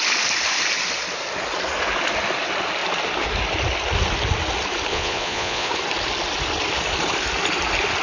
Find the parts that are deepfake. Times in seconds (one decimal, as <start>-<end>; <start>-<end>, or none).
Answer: 4.9-5.7